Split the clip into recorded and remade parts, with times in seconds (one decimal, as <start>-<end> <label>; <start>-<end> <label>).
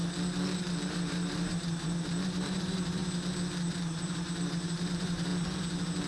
0.0-0.6 recorded; 0.6-3.0 remade; 3.0-3.7 recorded; 3.7-5.3 remade; 5.3-6.1 recorded